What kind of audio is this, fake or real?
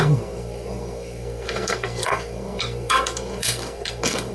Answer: fake